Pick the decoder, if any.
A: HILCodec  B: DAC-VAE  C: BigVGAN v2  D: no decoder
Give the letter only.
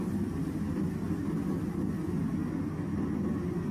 D